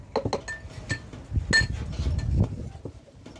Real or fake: real